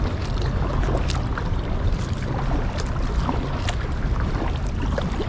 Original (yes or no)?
yes